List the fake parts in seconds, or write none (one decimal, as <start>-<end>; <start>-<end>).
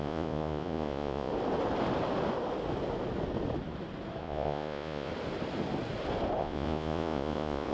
0.0-1.3; 4.2-5.1; 6.4-7.7